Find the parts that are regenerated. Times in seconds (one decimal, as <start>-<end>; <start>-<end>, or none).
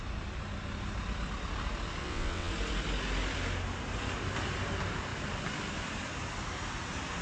2.0-2.5